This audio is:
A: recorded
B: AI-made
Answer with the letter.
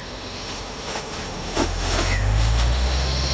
B